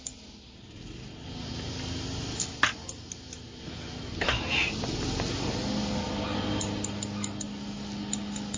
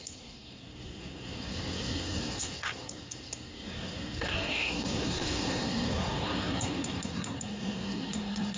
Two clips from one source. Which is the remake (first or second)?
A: second